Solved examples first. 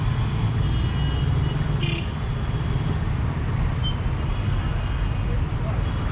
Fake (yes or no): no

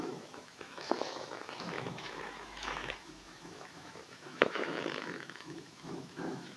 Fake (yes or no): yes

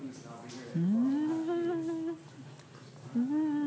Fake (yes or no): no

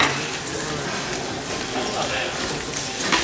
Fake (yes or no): no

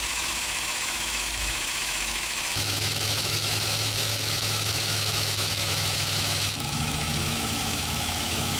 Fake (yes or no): yes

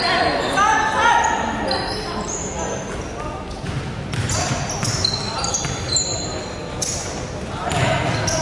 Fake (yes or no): no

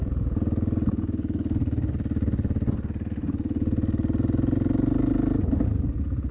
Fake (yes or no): no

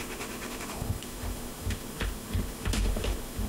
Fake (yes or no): yes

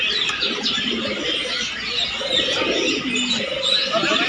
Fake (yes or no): no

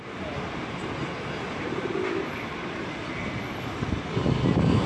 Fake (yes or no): no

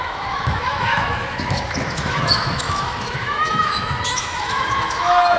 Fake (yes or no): yes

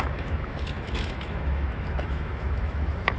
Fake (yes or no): yes